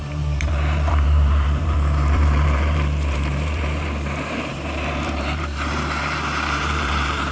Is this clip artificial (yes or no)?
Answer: yes